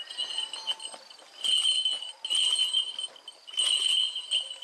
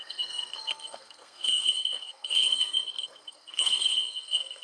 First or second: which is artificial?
second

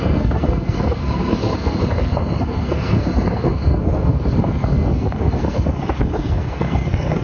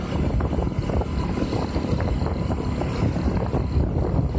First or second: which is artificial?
first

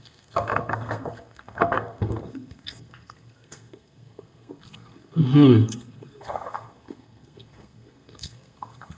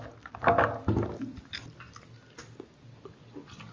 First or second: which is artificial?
first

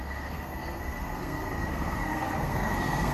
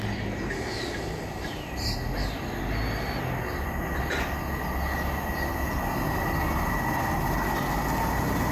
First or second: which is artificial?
first